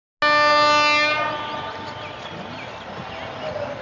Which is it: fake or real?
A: real